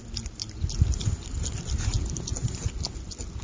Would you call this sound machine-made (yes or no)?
no